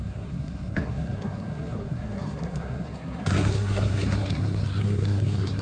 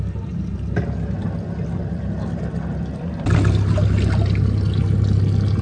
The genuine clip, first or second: second